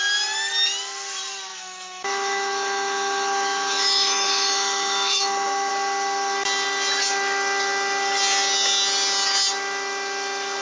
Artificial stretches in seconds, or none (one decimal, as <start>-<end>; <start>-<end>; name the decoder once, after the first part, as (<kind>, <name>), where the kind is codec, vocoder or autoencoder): 1.5-5.7 (autoencoder, DAC-VAE)